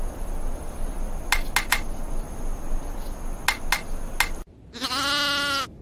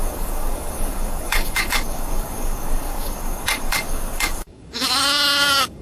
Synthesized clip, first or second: second